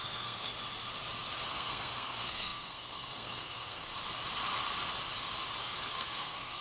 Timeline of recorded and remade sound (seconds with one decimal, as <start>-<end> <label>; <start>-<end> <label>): 0.0-0.5 remade; 0.5-1.5 recorded; 1.5-3.9 remade; 3.9-5.6 recorded; 5.6-6.6 remade